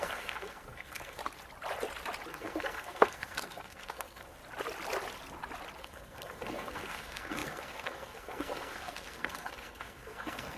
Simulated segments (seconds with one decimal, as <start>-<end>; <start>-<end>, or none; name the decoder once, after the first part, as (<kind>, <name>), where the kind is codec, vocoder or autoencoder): 0.0-1.2 (codec, SNAC); 2.3-4.4; 5.8-10.6

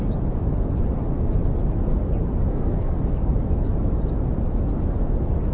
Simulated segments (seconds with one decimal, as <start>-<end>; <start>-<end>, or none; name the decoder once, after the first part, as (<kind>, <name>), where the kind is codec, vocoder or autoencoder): 2.5-3.0 (codec, SNAC)

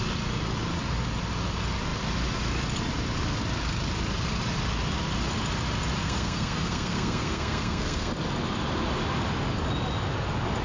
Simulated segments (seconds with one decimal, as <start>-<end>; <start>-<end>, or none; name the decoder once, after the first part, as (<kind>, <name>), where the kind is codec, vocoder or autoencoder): 6.0-8.1 (codec, SNAC)

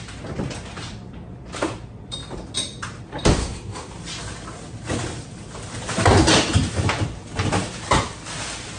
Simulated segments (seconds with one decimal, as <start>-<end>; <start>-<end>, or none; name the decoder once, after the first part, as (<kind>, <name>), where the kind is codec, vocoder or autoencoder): 3.4-3.9 (codec, SNAC)